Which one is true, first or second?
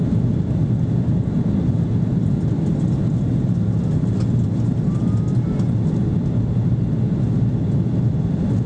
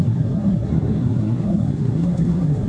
first